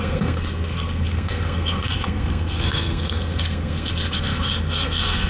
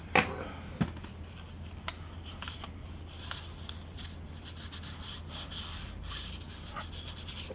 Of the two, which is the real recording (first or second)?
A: second